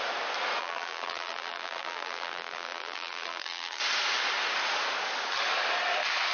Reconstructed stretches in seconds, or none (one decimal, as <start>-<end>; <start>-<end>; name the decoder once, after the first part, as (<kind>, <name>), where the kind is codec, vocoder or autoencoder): 0.6-3.8 (vocoder, BigVGAN v2)